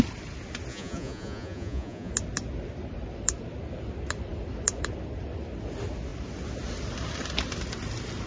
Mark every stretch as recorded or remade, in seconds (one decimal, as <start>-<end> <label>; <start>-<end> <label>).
0.0-0.7 recorded; 0.7-2.1 remade; 2.1-8.3 recorded